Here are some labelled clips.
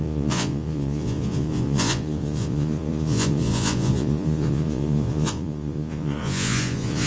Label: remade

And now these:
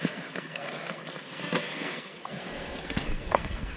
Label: remade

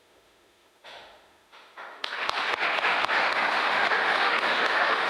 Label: remade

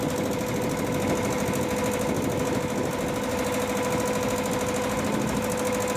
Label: recorded